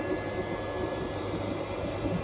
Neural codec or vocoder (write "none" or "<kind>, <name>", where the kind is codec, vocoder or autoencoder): none